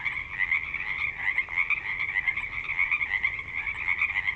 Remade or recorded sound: recorded